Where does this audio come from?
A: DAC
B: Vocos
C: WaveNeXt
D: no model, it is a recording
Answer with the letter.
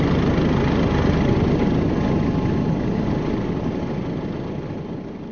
D